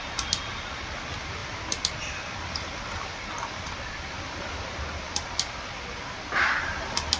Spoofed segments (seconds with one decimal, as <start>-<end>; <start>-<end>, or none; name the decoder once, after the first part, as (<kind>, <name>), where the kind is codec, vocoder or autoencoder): 1.4-5.7 (vocoder, BigVGAN v2)